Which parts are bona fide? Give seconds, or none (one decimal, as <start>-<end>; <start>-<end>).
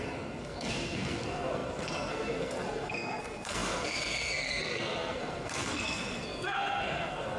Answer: none